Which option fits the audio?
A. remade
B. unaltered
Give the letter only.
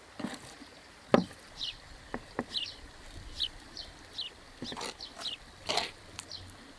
B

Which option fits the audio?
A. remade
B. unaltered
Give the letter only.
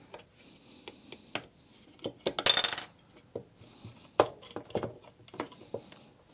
B